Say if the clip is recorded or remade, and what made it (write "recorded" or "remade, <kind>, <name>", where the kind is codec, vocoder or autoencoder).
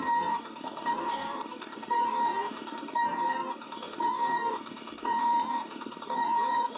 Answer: remade, codec, DAC